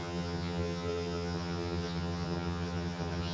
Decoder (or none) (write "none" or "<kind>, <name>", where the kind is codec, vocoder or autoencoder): vocoder, HiFi-GAN